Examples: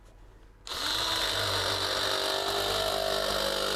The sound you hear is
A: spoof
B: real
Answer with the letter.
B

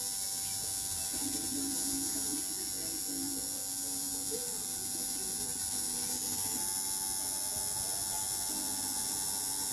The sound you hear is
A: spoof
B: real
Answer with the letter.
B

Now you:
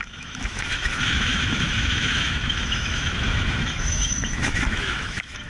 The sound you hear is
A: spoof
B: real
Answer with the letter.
A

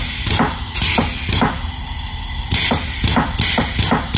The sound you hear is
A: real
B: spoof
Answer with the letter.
A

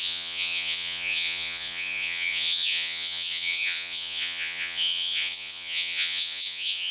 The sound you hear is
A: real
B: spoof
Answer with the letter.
B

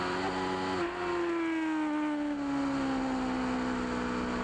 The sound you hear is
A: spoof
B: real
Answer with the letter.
B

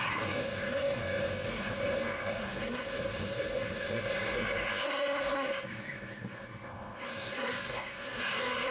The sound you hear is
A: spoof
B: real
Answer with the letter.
A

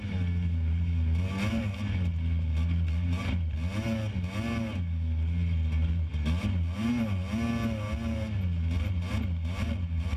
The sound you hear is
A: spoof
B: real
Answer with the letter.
B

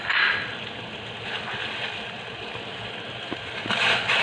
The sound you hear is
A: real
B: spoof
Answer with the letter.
A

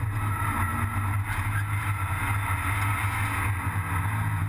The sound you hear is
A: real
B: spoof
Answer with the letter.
A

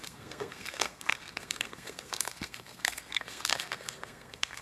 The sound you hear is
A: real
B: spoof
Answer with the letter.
B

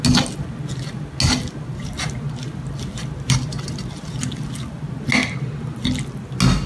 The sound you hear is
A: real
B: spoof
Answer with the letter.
A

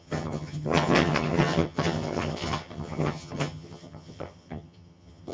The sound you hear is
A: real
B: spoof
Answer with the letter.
B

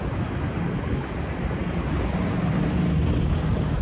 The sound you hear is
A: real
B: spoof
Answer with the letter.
A